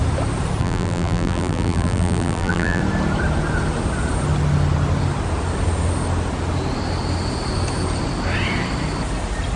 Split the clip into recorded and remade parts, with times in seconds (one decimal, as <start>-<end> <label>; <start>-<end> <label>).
0.0-0.6 recorded; 0.6-2.8 remade; 2.8-9.6 recorded